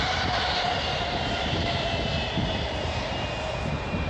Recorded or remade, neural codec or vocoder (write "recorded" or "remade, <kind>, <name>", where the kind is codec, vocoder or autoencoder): remade, vocoder, BigVGAN v2